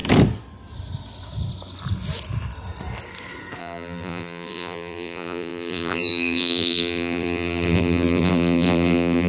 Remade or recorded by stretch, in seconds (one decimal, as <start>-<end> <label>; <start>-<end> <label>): 0.0-3.6 recorded; 3.6-9.3 remade